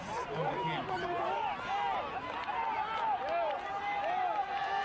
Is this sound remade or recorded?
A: recorded